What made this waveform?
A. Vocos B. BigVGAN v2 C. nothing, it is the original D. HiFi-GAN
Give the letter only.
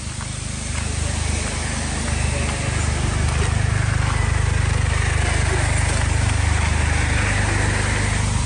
C